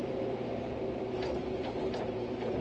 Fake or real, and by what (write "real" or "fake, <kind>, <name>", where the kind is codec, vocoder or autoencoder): fake, vocoder, BigVGAN v2